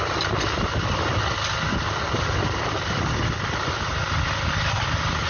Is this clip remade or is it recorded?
recorded